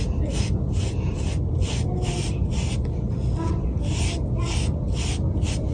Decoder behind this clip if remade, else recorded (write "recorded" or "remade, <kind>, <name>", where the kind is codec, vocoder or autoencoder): recorded